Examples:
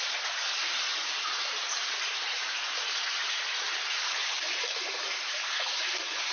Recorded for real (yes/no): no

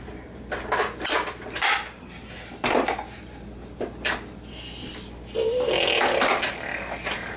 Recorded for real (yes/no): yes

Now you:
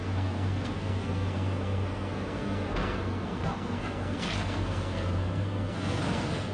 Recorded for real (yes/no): no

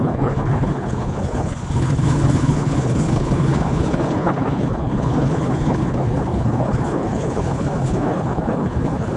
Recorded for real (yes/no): no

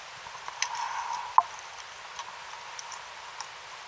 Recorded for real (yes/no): yes